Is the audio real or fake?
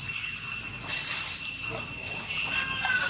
real